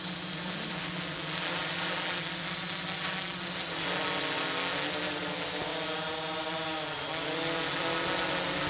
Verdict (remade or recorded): recorded